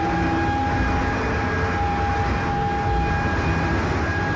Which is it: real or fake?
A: real